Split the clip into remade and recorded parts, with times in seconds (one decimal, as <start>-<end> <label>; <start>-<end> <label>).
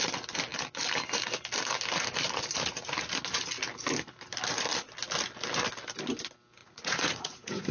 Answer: 0.0-6.6 recorded; 6.6-7.7 remade